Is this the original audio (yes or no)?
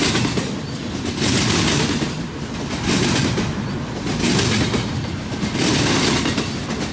yes